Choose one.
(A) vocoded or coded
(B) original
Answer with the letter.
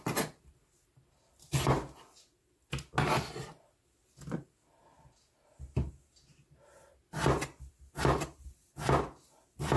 B